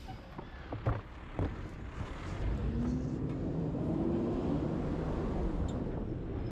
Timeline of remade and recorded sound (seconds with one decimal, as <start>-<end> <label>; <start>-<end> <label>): 0.0-6.5 recorded